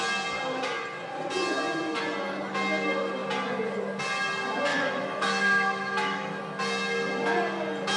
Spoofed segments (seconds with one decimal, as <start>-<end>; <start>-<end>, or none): 4.7-6.4